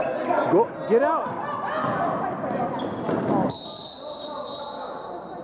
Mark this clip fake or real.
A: real